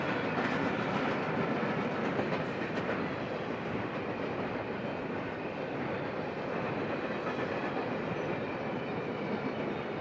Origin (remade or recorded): remade